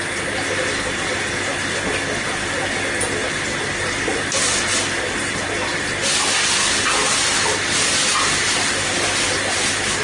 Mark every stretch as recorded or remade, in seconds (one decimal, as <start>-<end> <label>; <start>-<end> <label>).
0.0-10.0 recorded